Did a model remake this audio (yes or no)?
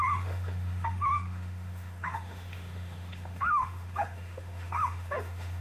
yes